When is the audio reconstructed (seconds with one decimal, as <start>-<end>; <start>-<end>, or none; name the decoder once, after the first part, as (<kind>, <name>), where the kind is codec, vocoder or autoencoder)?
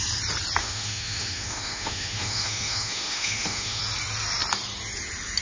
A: 0.6-3.8 (autoencoder, DAC-VAE)